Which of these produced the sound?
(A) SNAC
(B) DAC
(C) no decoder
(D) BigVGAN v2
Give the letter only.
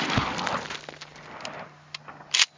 C